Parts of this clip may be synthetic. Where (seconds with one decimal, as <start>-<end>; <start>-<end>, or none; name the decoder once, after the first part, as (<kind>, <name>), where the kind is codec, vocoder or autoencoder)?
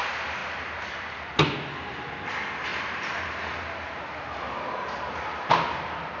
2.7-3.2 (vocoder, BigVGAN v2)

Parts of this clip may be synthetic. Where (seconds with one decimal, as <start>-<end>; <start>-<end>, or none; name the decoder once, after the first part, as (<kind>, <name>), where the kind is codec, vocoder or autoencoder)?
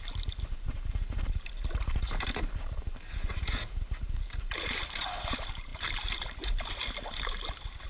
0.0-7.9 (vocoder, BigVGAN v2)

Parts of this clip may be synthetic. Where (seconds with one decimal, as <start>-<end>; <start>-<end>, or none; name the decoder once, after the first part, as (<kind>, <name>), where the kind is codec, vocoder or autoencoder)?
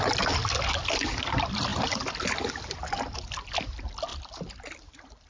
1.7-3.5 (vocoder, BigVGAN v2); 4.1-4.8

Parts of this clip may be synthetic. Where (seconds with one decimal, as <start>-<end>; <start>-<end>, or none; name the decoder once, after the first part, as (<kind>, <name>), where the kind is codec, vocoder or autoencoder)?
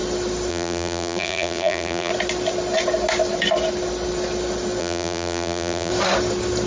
0.5-2.1 (vocoder, BigVGAN v2); 4.8-5.9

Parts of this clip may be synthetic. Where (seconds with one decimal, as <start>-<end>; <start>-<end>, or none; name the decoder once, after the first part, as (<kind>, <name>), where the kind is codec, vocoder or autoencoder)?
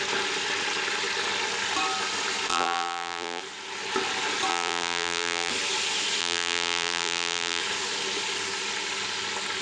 2.5-3.4 (vocoder, BigVGAN v2); 4.5-5.5; 6.2-7.6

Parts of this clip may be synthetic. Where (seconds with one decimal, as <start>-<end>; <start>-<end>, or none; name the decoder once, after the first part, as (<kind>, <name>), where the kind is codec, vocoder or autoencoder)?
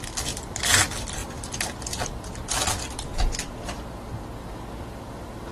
0.0-3.1 (vocoder, BigVGAN v2); 4.7-5.5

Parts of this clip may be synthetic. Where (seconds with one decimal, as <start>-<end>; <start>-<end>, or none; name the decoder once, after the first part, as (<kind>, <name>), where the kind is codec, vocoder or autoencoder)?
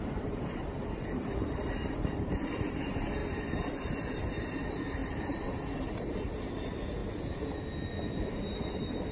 0.0-3.2 (vocoder, BigVGAN v2); 4.4-7.0